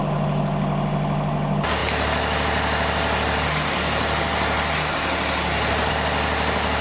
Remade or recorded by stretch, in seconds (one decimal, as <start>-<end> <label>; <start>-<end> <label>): 0.0-6.8 recorded